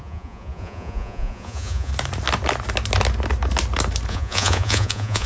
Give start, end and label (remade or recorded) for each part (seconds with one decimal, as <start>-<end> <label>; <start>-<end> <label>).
0.0-1.9 remade; 1.9-4.1 recorded; 4.1-5.3 remade